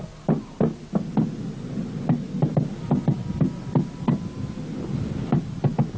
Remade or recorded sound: recorded